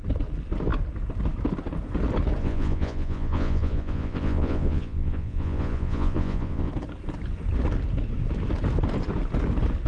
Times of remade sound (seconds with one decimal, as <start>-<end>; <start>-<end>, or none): 2.4-6.7

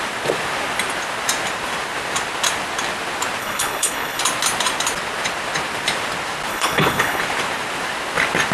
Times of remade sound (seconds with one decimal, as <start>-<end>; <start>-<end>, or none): 3.4-4.2; 6.5-7.2

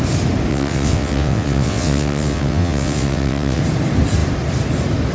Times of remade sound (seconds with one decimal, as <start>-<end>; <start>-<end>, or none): 0.5-3.6

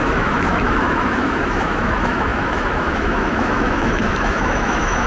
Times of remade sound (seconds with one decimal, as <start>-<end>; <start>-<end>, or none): 0.0-5.1

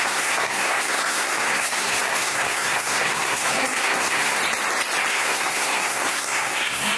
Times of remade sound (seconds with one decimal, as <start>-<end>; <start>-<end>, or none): 0.0-4.4; 5.1-7.0

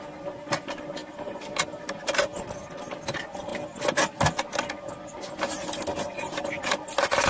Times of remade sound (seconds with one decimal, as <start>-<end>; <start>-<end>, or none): none